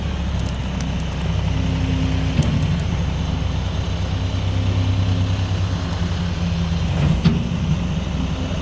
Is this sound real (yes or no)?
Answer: yes